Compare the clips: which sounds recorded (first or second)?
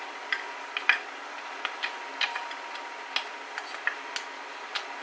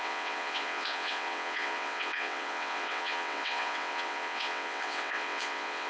first